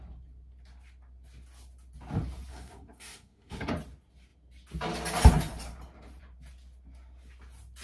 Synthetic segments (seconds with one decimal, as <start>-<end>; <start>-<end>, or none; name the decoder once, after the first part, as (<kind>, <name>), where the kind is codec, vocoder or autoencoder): 2.5-3.7 (codec, SNAC)